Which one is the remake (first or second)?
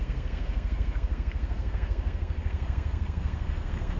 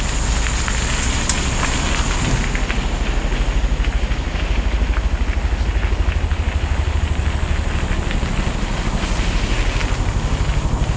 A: first